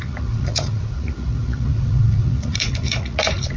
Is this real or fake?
fake